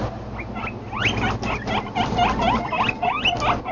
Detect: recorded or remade recorded